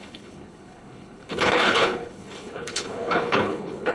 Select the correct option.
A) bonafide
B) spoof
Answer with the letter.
B